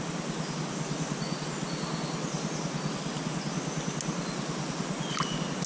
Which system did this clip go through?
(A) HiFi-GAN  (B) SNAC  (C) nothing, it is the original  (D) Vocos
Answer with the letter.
C